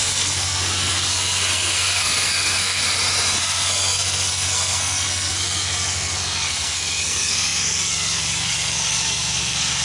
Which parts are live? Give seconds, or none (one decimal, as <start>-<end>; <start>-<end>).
2.8-3.4